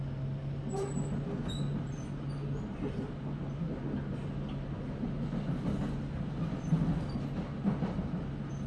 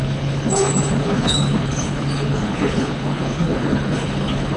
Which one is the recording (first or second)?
first